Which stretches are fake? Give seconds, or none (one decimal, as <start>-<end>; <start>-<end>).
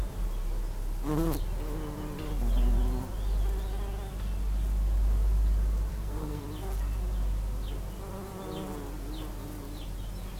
5.9-6.4